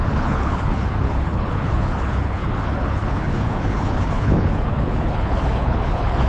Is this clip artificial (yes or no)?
yes